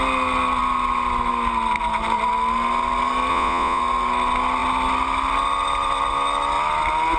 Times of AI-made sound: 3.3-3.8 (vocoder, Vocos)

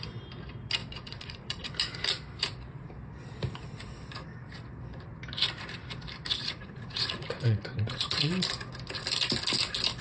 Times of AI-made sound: 0.8-1.7 (vocoder, Vocos); 6.4-8.3

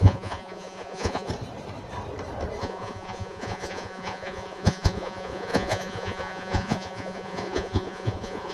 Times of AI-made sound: 0.0-1.3 (vocoder, Vocos); 2.6-8.5

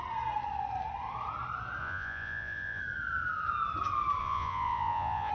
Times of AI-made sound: 1.8-2.8 (vocoder, Vocos); 4.2-5.3

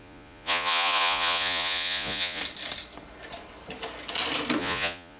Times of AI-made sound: 0.0-2.4 (vocoder, Vocos); 4.6-5.2